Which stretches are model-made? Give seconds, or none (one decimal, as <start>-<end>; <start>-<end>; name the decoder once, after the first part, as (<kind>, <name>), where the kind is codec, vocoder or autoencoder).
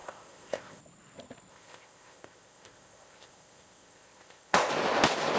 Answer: 0.0-0.8 (codec, ZipCodec); 1.5-4.7